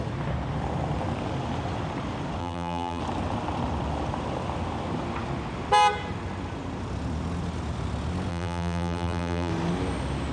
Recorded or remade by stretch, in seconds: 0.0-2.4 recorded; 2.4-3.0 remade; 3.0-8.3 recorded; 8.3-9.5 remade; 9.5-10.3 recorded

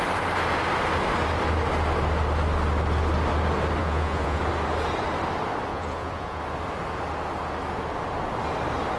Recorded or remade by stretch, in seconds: 0.0-3.8 recorded; 3.8-4.4 remade; 4.4-5.7 recorded; 5.7-6.4 remade; 6.4-9.0 recorded

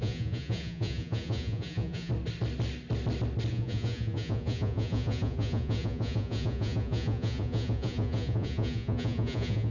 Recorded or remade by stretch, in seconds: 0.0-2.1 remade; 2.1-3.5 recorded; 3.5-9.7 remade